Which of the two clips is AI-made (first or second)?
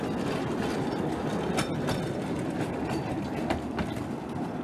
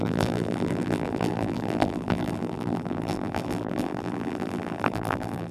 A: second